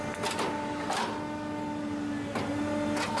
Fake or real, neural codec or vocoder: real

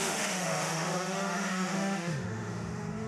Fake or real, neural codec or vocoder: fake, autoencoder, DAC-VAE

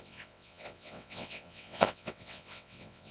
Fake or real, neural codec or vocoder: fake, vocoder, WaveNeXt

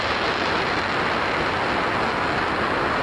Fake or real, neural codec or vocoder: real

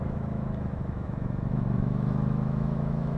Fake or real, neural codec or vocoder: fake, autoencoder, DAC-VAE